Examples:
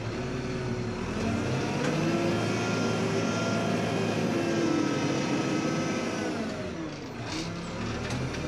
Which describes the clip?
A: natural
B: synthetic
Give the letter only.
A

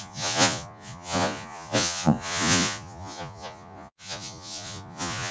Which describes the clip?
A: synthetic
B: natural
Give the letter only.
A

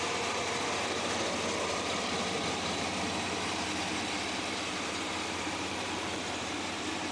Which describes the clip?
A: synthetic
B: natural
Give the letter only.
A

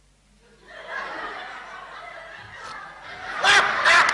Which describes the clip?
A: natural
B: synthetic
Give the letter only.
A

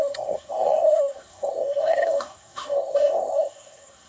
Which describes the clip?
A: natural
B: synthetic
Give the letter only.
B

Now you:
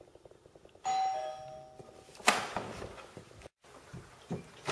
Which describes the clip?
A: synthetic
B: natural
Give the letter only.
B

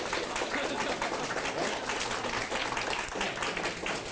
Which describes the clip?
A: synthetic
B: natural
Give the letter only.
B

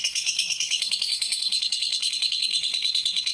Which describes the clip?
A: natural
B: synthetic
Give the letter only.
B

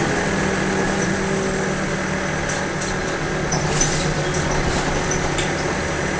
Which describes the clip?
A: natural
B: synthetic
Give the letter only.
A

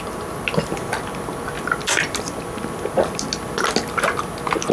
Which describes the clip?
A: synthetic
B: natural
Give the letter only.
B